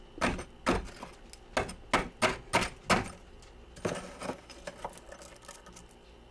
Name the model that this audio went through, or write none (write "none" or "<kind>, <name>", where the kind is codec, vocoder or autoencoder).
none